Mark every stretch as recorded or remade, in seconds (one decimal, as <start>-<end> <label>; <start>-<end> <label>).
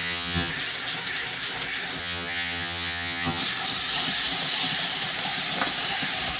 0.0-0.5 remade; 0.5-2.0 recorded; 2.0-3.4 remade; 3.4-6.4 recorded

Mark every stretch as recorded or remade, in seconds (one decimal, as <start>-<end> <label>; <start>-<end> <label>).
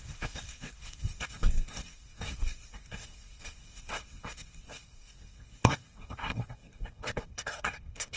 0.0-8.2 remade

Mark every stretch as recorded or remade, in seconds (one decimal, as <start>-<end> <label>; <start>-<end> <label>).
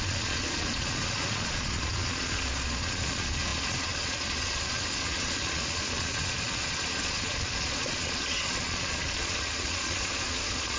0.0-10.8 remade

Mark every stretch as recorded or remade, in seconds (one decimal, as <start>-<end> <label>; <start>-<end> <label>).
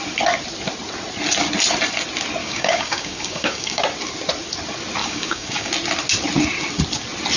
0.0-2.4 recorded; 2.4-3.8 remade; 3.8-5.0 recorded; 5.0-5.7 remade; 5.7-7.4 recorded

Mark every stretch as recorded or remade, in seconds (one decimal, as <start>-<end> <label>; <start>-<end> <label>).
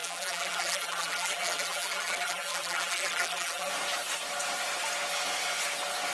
0.0-3.7 remade; 3.7-6.1 recorded